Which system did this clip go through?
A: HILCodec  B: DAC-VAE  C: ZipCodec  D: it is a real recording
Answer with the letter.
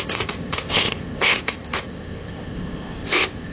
C